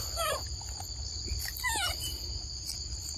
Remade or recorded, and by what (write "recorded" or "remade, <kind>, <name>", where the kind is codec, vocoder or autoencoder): recorded